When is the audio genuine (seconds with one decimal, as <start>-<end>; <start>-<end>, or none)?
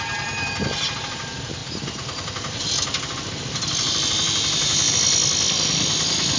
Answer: 0.0-6.4